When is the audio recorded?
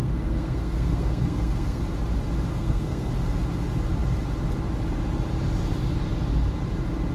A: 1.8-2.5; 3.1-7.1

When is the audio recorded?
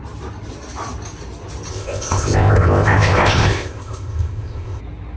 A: 0.0-1.7; 4.8-5.2